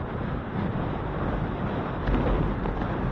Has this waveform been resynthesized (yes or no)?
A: no